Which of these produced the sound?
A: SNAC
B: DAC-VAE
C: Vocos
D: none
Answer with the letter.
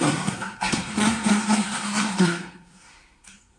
A